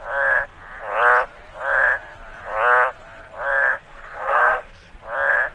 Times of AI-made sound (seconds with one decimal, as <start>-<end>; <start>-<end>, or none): 3.7-4.9